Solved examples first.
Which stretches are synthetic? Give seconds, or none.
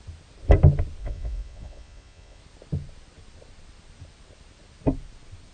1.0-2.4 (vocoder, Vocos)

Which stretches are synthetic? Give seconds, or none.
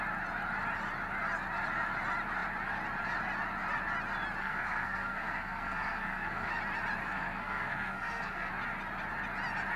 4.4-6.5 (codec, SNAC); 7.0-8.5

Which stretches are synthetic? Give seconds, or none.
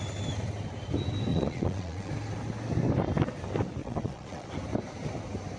1.3-2.1 (vocoder, Vocos); 3.8-4.5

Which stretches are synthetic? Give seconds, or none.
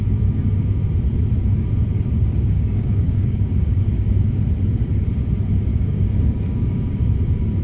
1.9-4.4 (codec, DAC); 5.7-7.1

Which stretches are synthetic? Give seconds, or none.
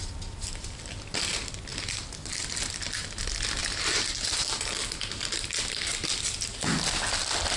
1.7-2.6 (vocoder, BigVGAN v2)